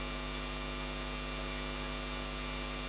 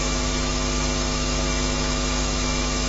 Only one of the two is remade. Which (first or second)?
second